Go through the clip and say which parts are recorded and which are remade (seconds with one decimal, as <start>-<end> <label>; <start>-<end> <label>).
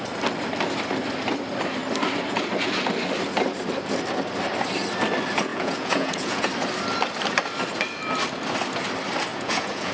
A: 0.0-5.5 recorded; 5.5-6.5 remade; 6.5-9.3 recorded; 9.3-9.9 remade